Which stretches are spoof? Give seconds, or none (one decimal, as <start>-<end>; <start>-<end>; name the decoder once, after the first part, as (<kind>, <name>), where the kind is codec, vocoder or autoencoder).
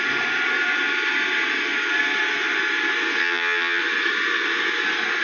3.2-3.8 (vocoder, HiFi-GAN)